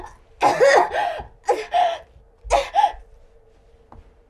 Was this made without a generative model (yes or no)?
yes